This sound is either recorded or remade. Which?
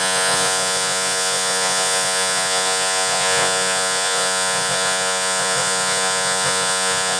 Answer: remade